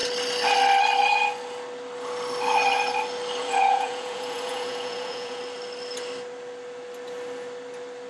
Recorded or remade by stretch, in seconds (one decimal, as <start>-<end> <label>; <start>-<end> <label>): 0.0-3.4 recorded; 3.4-5.4 remade; 5.4-8.1 recorded